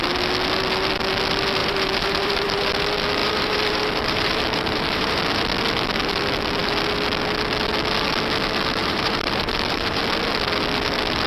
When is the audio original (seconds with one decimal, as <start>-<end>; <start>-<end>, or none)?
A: 0.0-1.6; 2.7-3.2; 5.2-8.8; 10.0-11.3